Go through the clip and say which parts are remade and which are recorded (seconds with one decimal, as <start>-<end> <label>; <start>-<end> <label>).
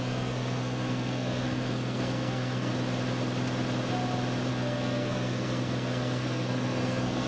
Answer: 0.0-2.7 remade; 2.7-4.5 recorded; 4.5-7.3 remade